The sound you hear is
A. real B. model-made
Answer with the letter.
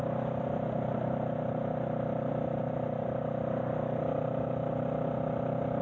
A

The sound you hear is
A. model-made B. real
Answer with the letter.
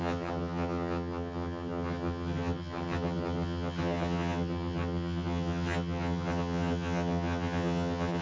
A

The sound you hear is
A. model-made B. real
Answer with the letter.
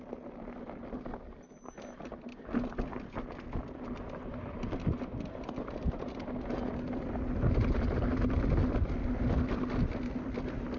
B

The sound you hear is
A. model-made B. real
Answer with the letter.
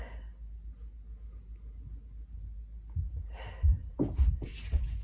B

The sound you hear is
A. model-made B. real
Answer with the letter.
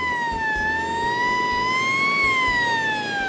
B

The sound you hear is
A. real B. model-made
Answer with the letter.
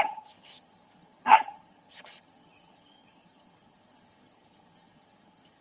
B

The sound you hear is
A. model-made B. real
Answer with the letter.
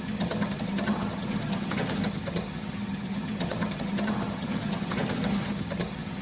A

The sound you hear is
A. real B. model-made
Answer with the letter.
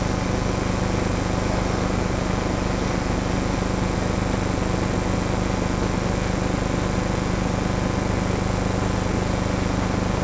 A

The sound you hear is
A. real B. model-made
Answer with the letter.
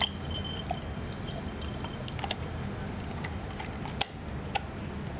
A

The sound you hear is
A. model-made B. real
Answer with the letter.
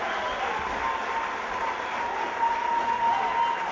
B